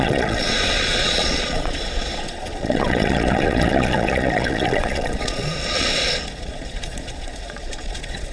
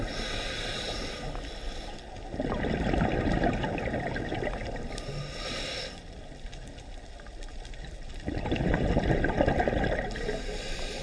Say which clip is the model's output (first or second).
first